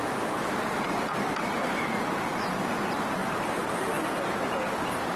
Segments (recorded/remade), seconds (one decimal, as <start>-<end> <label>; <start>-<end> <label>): 0.0-5.2 remade